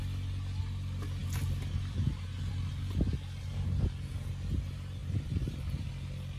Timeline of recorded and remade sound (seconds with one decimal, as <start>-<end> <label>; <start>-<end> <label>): 0.0-5.0 recorded; 5.0-5.9 remade; 5.9-6.4 recorded